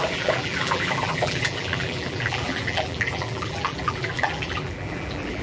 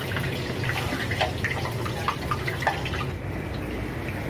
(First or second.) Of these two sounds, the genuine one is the second